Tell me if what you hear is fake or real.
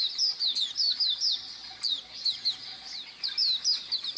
real